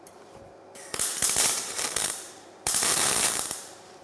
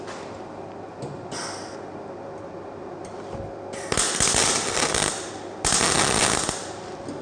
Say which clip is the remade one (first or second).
first